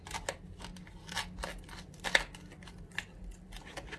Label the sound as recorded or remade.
recorded